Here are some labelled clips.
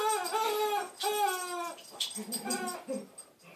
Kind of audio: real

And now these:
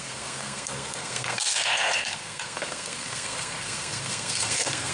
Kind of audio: fake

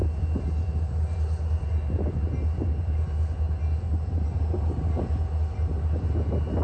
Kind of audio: real